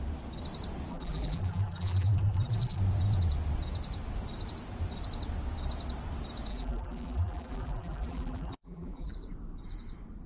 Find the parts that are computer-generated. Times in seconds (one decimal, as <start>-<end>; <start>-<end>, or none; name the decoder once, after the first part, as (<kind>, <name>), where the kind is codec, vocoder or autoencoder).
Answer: 0.9-2.8 (vocoder, BigVGAN v2); 6.5-9.1